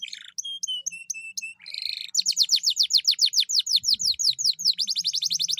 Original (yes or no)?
yes